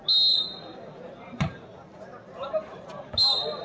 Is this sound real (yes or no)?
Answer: yes